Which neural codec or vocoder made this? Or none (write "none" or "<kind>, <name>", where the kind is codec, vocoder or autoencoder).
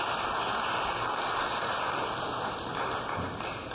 none